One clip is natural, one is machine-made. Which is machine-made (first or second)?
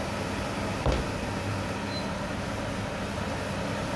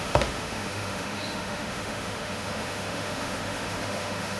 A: second